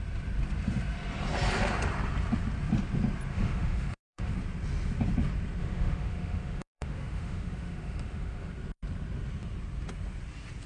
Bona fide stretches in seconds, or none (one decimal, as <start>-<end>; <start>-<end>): 0.0-3.3; 4.3-5.6; 8.5-10.7